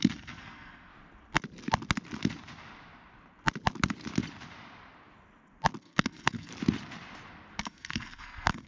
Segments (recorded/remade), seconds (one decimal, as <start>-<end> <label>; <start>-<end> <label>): 0.0-0.9 remade; 0.9-5.8 recorded; 5.8-6.5 remade; 6.5-7.6 recorded; 7.6-8.7 remade